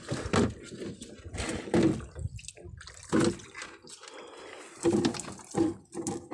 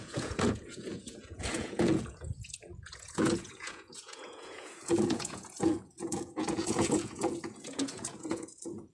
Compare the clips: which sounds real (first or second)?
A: first